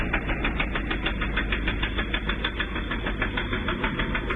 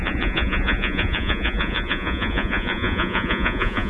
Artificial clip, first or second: second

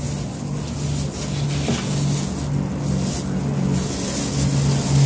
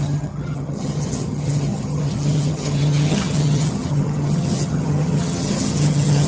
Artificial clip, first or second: second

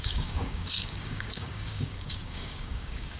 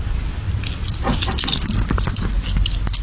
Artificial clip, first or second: first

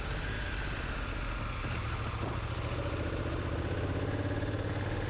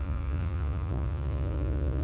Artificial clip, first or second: second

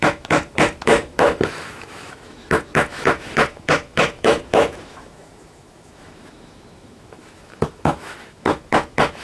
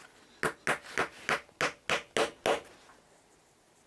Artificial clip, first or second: first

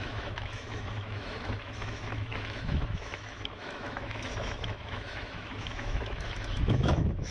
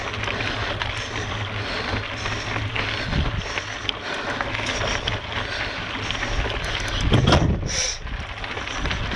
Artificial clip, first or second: first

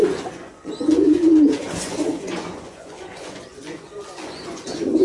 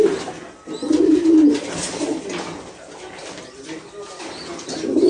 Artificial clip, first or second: first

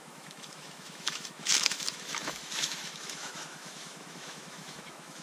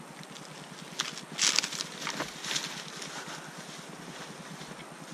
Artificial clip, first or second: first